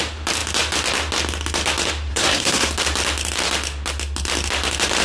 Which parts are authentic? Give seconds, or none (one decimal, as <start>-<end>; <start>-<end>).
0.0-2.1; 2.7-5.0